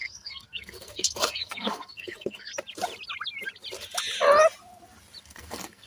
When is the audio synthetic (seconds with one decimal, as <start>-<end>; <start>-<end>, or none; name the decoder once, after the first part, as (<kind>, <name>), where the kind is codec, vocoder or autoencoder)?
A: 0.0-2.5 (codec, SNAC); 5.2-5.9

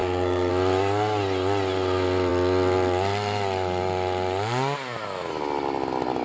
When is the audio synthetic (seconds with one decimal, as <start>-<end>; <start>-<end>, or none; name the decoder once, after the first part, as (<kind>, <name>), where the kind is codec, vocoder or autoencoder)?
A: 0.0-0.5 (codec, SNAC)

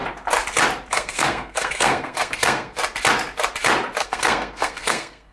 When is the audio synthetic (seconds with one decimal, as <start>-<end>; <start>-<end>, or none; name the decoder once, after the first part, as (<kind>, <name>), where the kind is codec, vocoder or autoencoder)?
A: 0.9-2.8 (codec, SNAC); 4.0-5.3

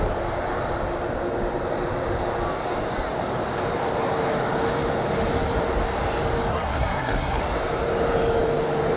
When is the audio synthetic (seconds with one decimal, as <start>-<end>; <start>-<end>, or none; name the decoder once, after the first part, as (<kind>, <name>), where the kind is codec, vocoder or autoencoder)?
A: 6.5-7.4 (codec, SNAC)